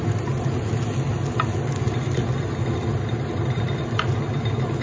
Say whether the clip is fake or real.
real